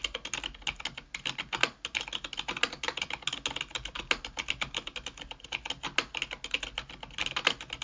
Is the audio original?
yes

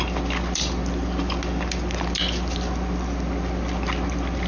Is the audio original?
yes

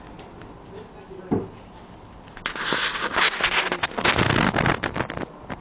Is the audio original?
yes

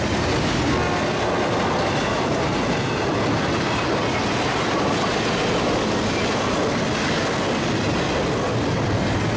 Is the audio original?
yes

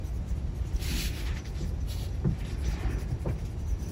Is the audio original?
yes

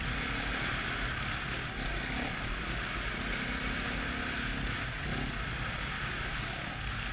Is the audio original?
yes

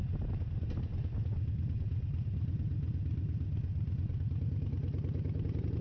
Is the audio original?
yes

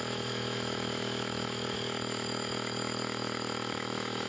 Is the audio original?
no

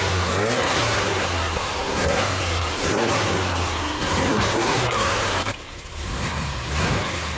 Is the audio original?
no